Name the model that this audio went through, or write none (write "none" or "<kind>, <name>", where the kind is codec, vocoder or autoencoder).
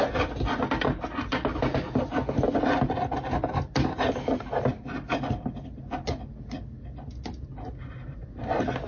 none